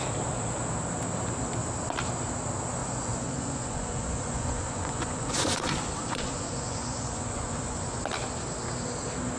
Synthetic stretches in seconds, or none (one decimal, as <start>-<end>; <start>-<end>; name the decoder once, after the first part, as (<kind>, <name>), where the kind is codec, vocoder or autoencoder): 2.8-8.0 (vocoder, Vocos)